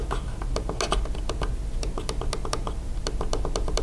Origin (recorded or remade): recorded